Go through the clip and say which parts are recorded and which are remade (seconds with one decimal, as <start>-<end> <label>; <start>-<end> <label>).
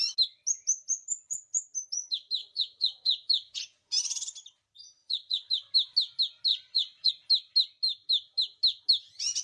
0.0-2.4 recorded; 2.4-3.9 remade; 3.9-5.0 recorded; 5.0-5.5 remade; 5.5-6.5 recorded; 6.5-7.1 remade; 7.1-9.4 recorded